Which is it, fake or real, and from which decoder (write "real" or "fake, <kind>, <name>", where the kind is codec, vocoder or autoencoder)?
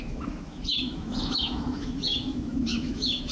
fake, autoencoder, DAC-VAE